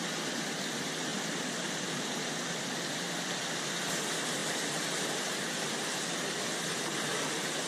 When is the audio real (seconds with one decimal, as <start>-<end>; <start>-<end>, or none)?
0.0-1.1; 2.7-7.7

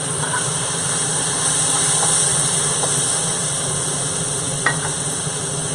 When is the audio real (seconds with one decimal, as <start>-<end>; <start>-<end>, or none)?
0.0-5.7

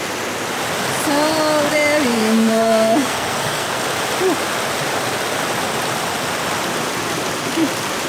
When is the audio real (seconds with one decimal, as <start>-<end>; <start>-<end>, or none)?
0.0-2.1; 3.8-8.1

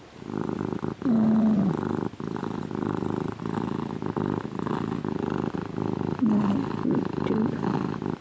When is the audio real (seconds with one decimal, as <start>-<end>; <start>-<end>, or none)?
0.0-8.2

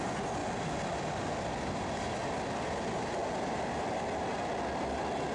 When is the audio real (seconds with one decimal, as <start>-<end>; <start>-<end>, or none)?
0.0-3.2; 3.9-5.3

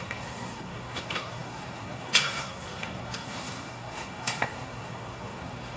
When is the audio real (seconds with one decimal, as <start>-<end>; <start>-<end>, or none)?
none

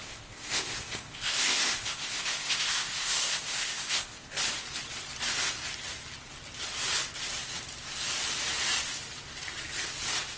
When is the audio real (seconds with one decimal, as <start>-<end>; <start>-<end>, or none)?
4.4-10.4

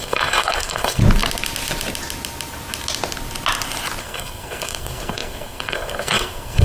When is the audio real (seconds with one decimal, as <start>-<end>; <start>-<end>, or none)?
1.0-4.0